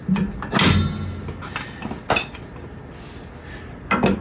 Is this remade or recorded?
recorded